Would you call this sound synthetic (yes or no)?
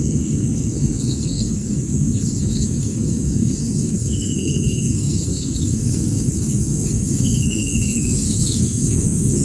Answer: yes